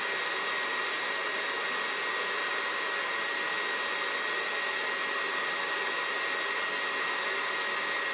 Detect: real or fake real